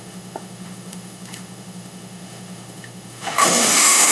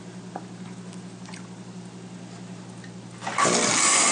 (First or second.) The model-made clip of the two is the first